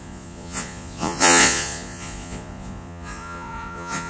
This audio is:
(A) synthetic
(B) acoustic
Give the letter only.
A